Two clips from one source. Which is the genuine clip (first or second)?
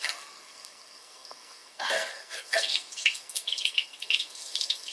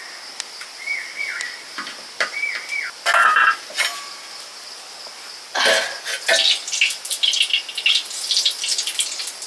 second